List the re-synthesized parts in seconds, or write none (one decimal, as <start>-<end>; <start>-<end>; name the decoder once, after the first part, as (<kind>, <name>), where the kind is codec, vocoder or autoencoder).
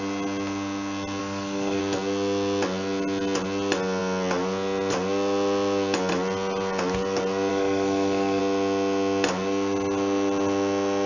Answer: 1.2-1.8 (codec, SNAC); 7.5-8.4